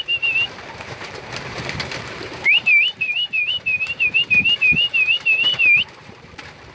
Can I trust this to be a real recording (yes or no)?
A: no